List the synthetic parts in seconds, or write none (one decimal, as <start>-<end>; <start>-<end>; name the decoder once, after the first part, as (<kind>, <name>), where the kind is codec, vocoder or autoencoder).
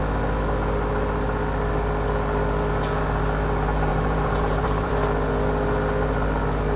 3.9-4.9 (vocoder, BigVGAN v2)